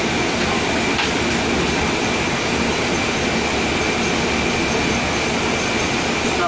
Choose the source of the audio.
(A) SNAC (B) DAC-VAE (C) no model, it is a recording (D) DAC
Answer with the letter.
C